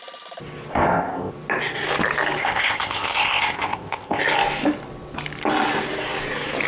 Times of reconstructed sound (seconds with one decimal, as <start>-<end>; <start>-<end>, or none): 0.7-1.3; 2.4-4.2